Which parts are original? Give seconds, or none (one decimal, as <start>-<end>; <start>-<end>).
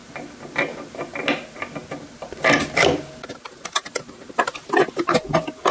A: 0.0-5.7